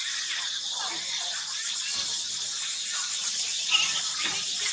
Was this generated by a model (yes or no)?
no